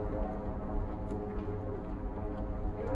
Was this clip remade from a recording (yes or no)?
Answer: no